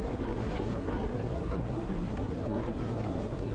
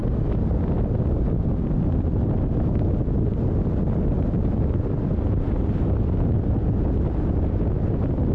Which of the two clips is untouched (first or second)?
second